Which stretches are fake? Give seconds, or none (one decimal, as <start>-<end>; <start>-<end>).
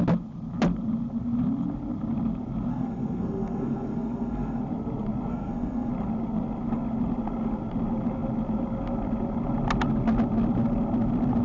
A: 2.7-4.6; 5.3-5.9